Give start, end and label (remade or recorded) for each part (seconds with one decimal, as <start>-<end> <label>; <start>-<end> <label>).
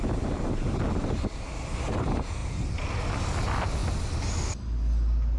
0.0-5.4 recorded